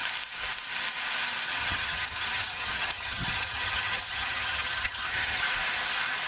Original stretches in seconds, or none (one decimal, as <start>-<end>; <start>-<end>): 0.0-1.6; 5.4-6.3